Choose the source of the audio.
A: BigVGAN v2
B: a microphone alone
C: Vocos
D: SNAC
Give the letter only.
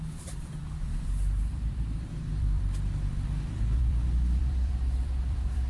A